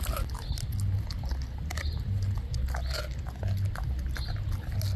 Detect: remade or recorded recorded